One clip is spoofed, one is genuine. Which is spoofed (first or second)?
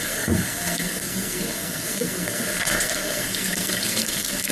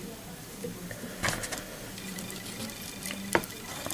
first